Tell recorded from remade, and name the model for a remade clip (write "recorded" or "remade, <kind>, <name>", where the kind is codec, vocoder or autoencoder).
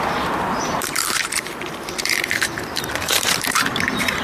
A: remade, vocoder, BigVGAN v2